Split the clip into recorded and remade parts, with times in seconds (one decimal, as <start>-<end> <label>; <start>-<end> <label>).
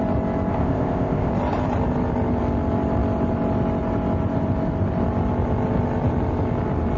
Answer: 0.0-0.5 recorded; 0.5-1.3 remade; 1.3-7.0 recorded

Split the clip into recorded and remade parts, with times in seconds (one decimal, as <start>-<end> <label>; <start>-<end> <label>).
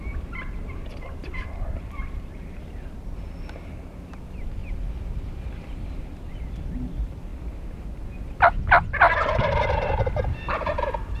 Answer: 0.0-1.2 recorded; 1.2-3.0 remade; 3.0-11.2 recorded